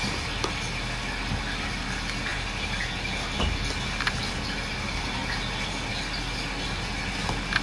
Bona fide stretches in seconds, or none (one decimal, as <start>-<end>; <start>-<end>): 0.0-7.6